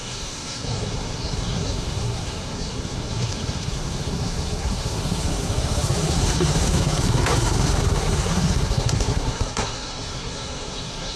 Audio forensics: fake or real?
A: fake